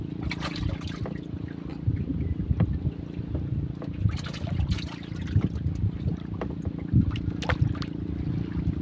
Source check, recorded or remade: recorded